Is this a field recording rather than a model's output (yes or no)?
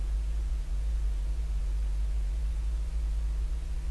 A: no